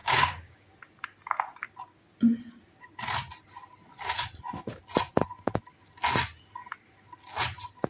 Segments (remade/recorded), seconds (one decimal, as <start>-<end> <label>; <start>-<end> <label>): 0.0-0.7 remade; 0.7-7.9 recorded